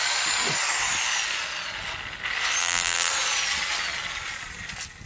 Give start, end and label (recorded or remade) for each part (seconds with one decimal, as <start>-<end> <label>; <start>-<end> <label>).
0.0-2.6 recorded; 2.6-3.1 remade; 3.1-5.1 recorded